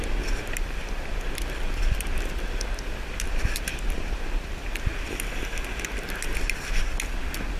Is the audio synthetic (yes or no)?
no